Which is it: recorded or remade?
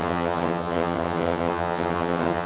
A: remade